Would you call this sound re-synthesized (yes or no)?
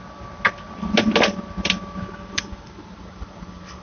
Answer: no